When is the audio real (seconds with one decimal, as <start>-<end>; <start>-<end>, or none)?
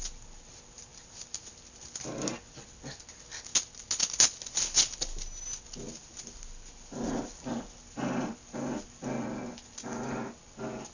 0.0-10.9